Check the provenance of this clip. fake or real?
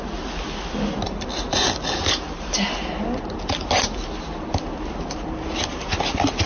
real